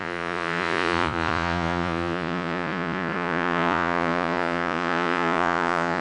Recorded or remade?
remade